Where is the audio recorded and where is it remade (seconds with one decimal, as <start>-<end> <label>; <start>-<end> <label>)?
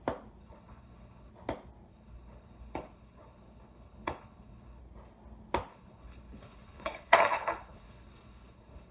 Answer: 0.0-0.4 recorded; 0.4-1.3 remade; 1.3-1.9 recorded; 1.9-4.8 remade; 4.8-5.7 recorded; 5.7-8.9 remade